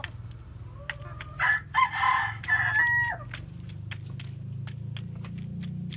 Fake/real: real